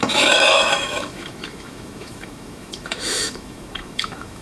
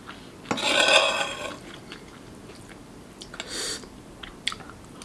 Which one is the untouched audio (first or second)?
second